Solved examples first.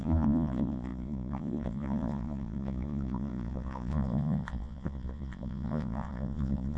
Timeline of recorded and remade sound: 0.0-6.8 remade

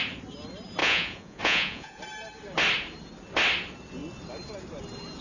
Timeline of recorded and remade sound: 0.0-0.8 recorded; 0.8-2.0 remade; 2.0-5.2 recorded